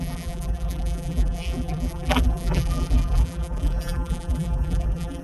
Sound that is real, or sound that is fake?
fake